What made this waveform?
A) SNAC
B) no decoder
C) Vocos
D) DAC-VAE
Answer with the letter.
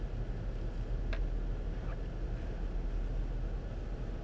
B